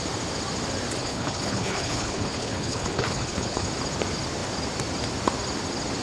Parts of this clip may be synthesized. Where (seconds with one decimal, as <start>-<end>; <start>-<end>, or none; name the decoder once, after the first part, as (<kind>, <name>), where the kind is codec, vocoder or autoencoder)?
1.0-3.7 (codec, HILCodec)